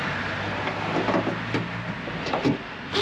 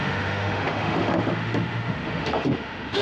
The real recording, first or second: first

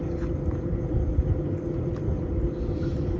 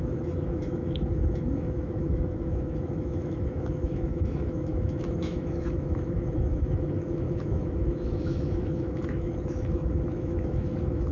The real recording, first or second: first